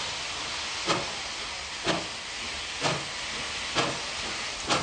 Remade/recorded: recorded